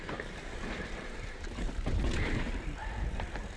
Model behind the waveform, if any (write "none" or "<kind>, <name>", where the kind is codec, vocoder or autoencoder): vocoder, BigVGAN v2